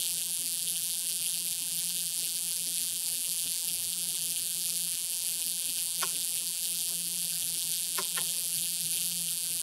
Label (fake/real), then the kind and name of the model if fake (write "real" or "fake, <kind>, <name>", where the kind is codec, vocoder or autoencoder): fake, vocoder, BigVGAN v2